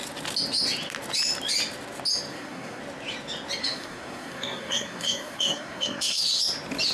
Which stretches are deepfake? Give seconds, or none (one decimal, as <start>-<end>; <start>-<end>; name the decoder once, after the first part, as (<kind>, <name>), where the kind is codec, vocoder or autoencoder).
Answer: 2.3-2.8 (codec, SNAC); 3.6-6.4